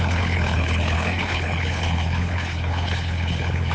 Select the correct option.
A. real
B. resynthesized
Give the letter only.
B